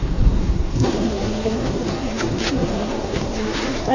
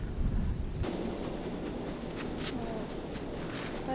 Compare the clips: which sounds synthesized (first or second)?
first